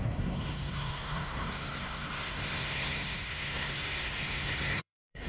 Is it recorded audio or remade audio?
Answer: remade